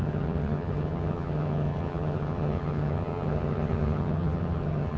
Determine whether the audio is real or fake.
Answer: fake